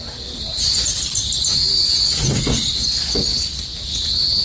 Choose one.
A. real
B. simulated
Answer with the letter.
A